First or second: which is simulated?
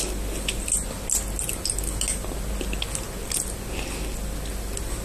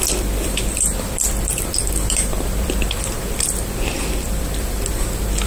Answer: second